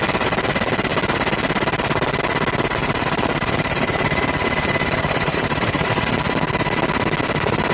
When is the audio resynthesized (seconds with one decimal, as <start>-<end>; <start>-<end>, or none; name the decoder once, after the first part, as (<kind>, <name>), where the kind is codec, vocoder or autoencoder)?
2.8-6.0 (vocoder, BigVGAN v2)